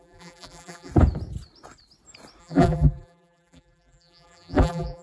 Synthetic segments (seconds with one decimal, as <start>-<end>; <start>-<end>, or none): 0.0-0.9; 2.4-5.0